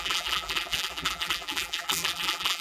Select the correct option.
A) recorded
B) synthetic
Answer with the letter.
B